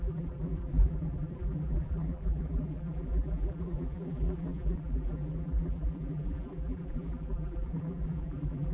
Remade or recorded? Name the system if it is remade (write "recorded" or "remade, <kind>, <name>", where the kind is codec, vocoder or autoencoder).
remade, vocoder, BigVGAN v2